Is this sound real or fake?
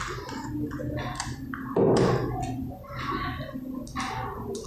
real